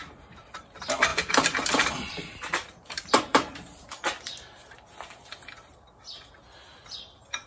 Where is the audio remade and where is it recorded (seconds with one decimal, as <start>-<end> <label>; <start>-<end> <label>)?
0.0-1.1 recorded; 1.1-4.7 remade; 4.7-7.5 recorded